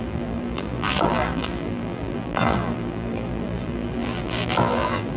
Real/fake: fake